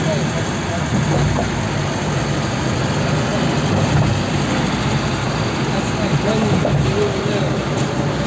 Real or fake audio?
real